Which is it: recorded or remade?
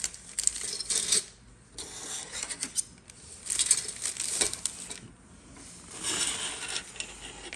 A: recorded